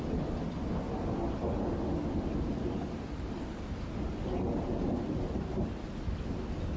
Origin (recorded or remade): recorded